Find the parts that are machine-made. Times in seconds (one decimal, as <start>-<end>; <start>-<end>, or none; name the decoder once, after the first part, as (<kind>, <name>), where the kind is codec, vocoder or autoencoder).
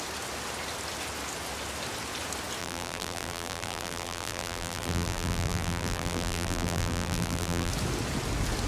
2.6-7.7 (vocoder, BigVGAN v2)